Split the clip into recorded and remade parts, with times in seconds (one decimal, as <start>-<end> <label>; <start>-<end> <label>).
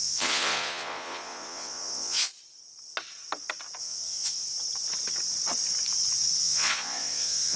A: 0.0-2.3 remade; 2.3-3.8 recorded; 3.8-4.4 remade; 4.4-6.4 recorded; 6.4-7.6 remade